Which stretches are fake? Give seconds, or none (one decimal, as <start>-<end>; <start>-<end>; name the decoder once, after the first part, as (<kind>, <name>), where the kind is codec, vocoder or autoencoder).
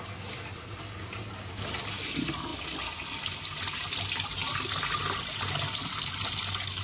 none